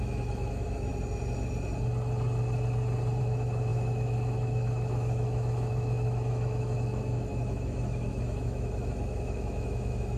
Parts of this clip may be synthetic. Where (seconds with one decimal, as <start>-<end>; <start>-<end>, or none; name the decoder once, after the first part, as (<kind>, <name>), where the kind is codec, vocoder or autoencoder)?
0.0-0.9 (autoencoder, DAC-VAE); 3.2-10.2